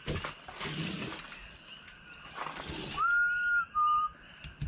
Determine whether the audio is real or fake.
real